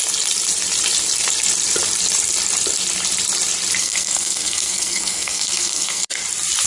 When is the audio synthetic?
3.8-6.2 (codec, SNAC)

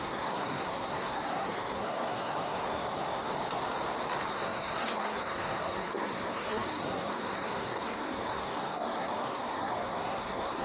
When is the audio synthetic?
0.0-3.3 (codec, SNAC); 4.3-10.6

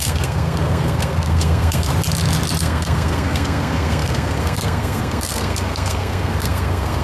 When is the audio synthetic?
0.0-1.9 (codec, SNAC); 2.6-7.0